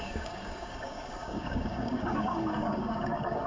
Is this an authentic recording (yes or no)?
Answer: no